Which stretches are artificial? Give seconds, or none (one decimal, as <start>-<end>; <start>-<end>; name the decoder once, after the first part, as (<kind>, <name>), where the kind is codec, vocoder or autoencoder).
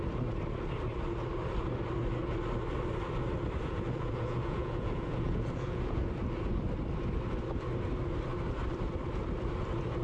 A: 3.6-6.0 (vocoder, Vocos)